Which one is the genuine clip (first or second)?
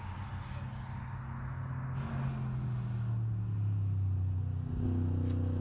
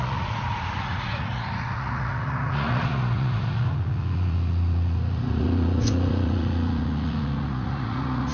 first